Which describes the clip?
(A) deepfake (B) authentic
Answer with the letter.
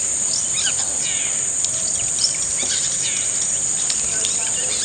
B